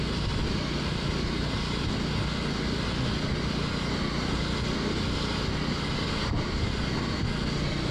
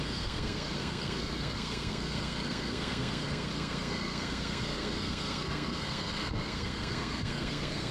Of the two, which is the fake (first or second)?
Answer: second